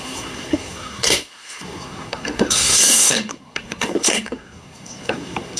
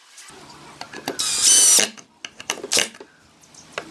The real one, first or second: second